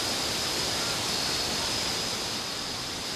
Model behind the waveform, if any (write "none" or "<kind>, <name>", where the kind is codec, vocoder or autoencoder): none